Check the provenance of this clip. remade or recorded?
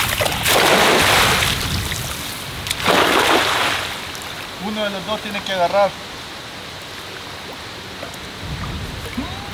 recorded